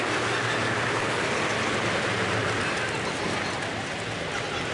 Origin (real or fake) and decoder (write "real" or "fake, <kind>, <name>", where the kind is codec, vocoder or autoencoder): real